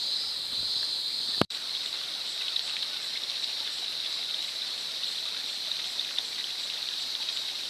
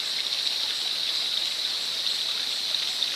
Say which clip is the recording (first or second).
second